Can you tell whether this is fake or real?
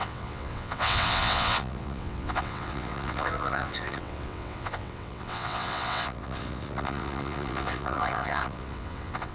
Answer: fake